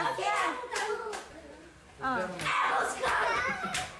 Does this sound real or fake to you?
real